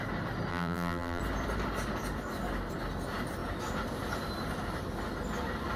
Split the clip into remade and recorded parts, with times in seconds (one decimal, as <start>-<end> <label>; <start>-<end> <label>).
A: 0.0-0.5 recorded; 0.5-1.2 remade; 1.2-5.8 recorded